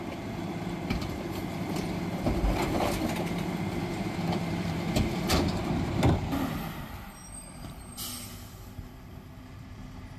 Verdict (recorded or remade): remade